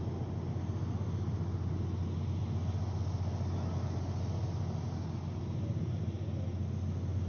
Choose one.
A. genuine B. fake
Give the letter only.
A